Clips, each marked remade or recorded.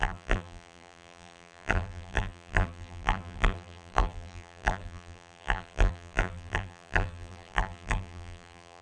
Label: remade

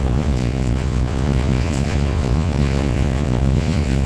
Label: remade